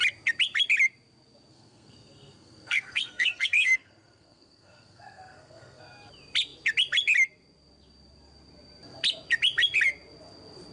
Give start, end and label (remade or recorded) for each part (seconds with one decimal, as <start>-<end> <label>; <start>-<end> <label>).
0.0-1.5 recorded; 1.5-5.8 remade; 5.8-10.7 recorded